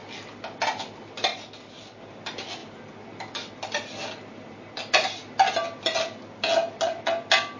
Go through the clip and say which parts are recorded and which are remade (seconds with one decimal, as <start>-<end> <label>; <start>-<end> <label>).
0.0-7.6 recorded